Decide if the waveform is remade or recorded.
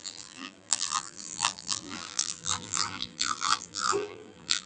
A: remade